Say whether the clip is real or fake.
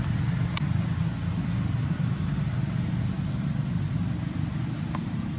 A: real